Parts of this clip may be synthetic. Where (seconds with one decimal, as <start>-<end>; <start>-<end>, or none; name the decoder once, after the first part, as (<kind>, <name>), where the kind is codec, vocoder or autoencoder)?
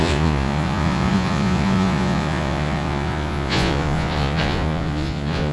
0.0-5.5 (vocoder, Vocos)